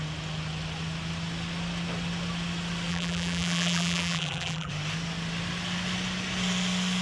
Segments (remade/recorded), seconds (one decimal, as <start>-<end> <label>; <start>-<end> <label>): 0.0-2.9 recorded; 2.9-4.7 remade; 4.7-7.0 recorded